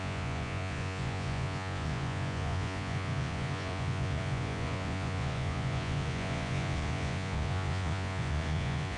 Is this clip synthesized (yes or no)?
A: yes